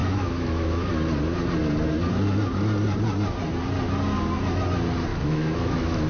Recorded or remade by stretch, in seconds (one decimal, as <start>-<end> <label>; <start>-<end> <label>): 0.0-0.9 remade; 0.9-5.1 recorded; 5.1-6.1 remade